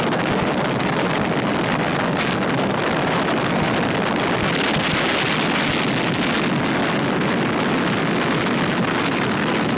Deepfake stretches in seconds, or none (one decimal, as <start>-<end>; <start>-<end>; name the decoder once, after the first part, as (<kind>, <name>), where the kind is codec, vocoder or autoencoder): none